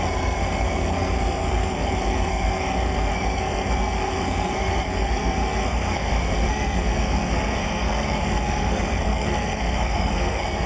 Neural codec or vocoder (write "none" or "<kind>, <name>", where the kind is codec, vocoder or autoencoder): codec, SNAC